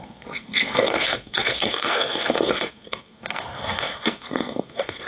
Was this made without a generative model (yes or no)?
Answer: no